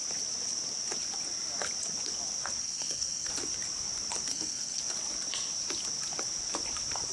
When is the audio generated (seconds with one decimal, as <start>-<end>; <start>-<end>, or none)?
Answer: 2.6-3.3; 4.3-4.8